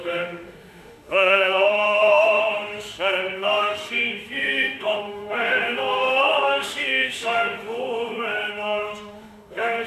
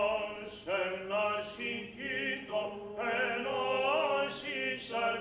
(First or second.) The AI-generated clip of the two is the first